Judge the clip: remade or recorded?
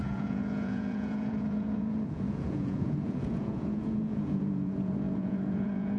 remade